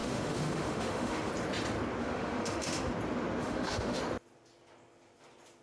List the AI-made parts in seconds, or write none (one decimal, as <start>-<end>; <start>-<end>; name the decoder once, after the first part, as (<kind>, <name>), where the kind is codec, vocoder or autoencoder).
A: 0.0-1.3 (autoencoder, DAC-VAE); 2.0-2.9; 3.4-4.0